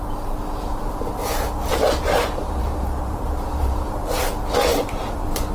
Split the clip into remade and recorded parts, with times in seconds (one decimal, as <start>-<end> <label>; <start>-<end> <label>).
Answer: 0.0-1.7 recorded; 1.7-4.3 remade; 4.3-4.7 recorded; 4.7-5.5 remade